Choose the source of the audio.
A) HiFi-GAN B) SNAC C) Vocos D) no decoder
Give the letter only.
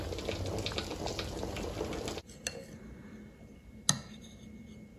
D